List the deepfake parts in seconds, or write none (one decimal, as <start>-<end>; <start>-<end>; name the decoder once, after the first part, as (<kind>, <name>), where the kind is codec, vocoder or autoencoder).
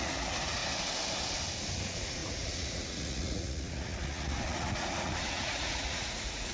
0.0-0.6 (vocoder, Vocos); 1.8-6.5